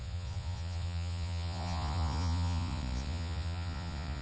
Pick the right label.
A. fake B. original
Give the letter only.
A